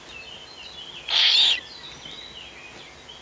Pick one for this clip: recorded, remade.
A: recorded